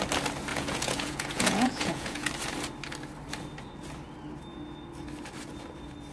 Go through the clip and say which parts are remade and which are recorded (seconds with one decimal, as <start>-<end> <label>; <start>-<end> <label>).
0.0-0.5 recorded; 0.5-2.3 remade; 2.3-6.1 recorded